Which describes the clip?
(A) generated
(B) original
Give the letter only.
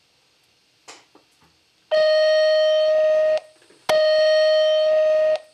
B